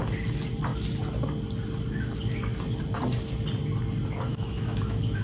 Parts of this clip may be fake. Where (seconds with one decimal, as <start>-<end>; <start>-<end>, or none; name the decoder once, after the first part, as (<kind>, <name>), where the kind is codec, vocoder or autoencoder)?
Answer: 4.3-5.2 (autoencoder, DAC-VAE)